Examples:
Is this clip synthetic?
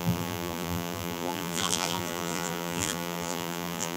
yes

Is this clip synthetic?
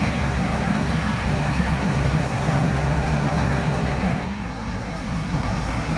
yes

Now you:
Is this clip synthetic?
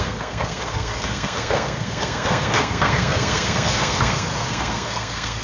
yes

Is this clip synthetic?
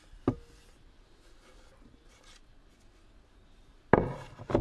no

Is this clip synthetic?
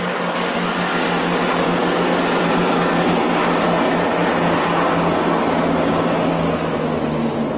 no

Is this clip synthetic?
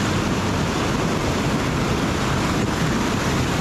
no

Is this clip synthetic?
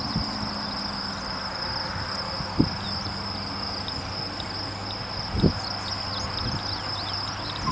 no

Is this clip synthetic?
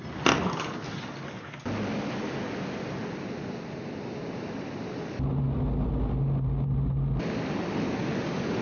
no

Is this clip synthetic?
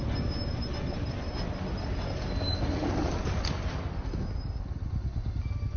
no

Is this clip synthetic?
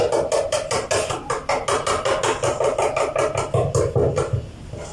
no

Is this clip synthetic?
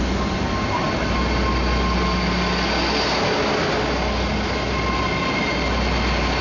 no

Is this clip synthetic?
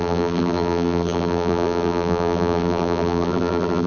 yes